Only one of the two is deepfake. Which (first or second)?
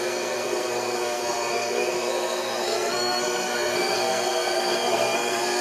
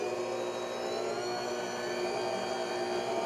first